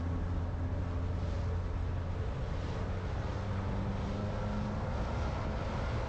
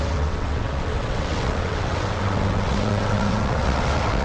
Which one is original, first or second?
first